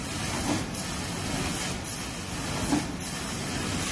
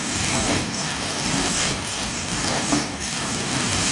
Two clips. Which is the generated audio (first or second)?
second